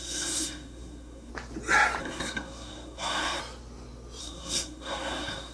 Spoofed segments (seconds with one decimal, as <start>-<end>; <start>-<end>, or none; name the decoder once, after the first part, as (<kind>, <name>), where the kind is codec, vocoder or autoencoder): 0.0-1.3 (codec, SNAC); 2.0-3.4; 4.2-5.5